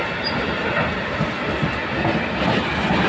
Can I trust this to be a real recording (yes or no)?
yes